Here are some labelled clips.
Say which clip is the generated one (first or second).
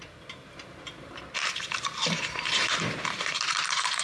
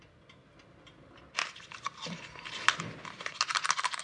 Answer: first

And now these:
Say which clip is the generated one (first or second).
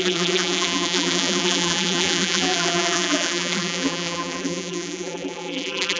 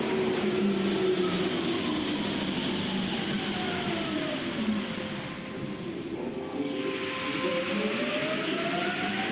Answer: first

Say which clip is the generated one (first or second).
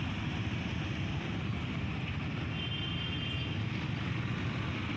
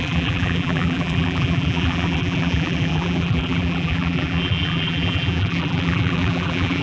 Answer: second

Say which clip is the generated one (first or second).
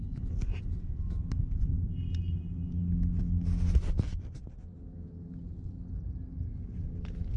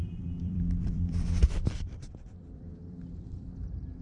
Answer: second